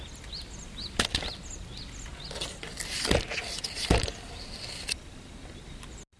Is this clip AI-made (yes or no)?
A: no